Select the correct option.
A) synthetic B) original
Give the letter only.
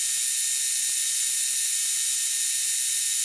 B